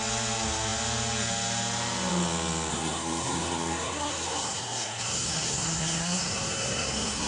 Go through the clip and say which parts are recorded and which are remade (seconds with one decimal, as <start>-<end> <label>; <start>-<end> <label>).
0.0-2.7 recorded; 2.7-7.3 remade